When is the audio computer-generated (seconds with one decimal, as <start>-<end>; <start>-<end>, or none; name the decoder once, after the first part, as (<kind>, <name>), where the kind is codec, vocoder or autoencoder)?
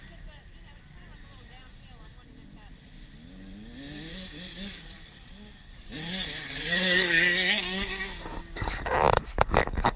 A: 4.1-8.0 (codec, DAC); 9.3-10.0